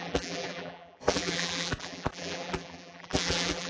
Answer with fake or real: fake